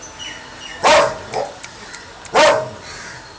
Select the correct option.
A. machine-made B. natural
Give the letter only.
B